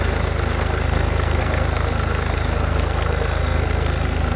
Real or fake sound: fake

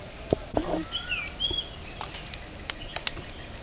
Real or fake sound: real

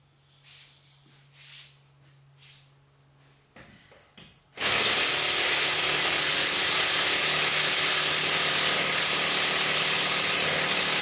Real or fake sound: real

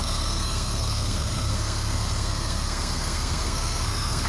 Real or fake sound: fake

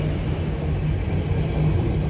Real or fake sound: real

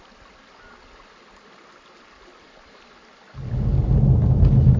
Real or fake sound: real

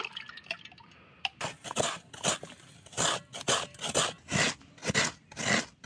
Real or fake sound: real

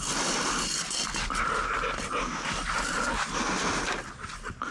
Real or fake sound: real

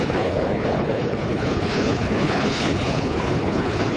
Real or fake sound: fake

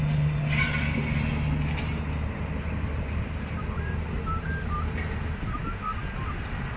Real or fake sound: real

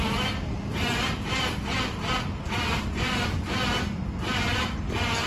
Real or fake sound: real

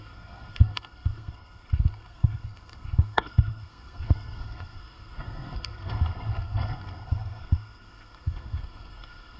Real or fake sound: fake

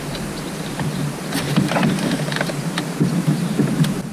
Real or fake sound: real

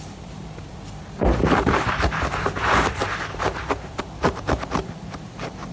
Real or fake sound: fake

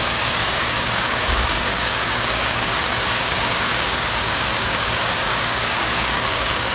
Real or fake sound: fake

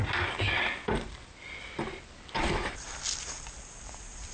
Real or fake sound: real